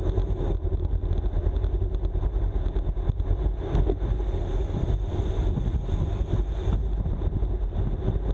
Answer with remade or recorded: recorded